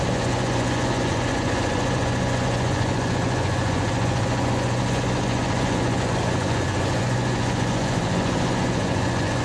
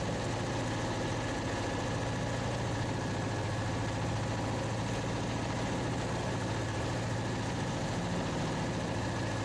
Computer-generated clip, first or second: first